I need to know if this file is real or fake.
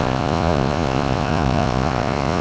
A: fake